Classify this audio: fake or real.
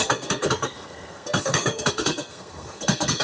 fake